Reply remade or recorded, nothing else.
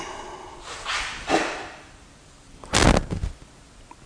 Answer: recorded